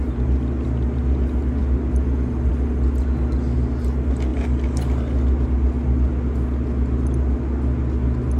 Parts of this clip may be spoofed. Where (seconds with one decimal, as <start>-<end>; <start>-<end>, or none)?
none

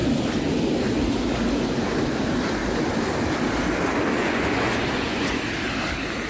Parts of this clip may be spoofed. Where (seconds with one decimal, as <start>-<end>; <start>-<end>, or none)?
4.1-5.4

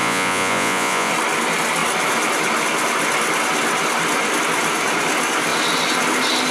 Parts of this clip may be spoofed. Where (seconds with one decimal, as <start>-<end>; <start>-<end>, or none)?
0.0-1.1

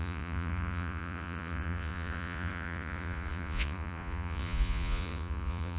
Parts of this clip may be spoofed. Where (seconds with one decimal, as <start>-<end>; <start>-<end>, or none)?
0.0-5.8

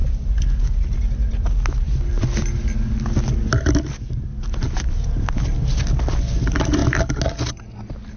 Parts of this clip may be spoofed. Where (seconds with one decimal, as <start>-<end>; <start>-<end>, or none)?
none

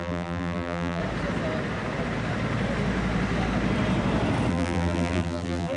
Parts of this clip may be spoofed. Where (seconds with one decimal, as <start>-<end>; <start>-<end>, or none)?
0.0-1.0; 4.5-5.8

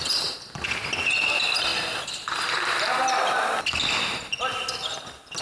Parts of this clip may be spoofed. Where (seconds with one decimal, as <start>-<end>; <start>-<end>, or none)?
none